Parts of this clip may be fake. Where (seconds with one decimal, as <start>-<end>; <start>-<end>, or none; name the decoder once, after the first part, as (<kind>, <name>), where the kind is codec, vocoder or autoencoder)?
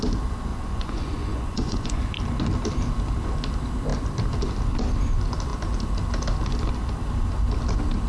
0.5-2.0 (vocoder, Vocos)